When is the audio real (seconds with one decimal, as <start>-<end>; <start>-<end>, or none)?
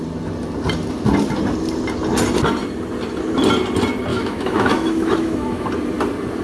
0.0-4.1; 5.7-6.4